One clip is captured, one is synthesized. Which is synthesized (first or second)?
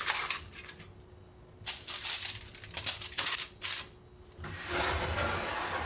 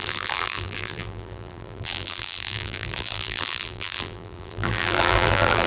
second